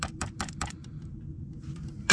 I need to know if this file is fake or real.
fake